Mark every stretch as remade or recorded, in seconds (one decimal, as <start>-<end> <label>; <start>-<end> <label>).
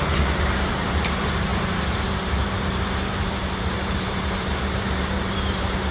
0.0-5.9 remade